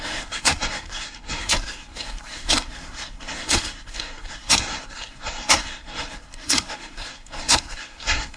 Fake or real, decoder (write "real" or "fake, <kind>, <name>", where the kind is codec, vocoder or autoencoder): fake, codec, SNAC